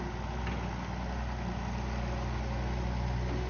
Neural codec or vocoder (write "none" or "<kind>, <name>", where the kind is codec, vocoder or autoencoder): none